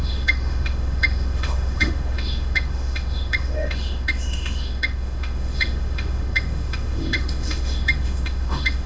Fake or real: fake